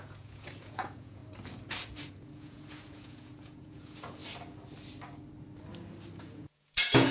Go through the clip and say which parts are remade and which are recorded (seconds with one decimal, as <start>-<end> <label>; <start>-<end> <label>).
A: 0.0-1.2 remade; 1.2-2.1 recorded; 2.1-4.2 remade; 4.2-6.2 recorded; 6.2-7.1 remade